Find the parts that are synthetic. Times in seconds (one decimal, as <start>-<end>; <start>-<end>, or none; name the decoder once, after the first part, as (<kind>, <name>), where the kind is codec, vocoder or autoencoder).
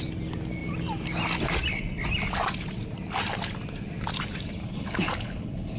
4.6-5.8 (codec, HILCodec)